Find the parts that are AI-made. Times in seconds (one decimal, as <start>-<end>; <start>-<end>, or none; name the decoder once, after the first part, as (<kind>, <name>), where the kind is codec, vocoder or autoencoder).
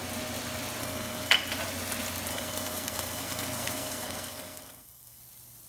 0.8-1.4 (codec, SNAC); 2.3-5.2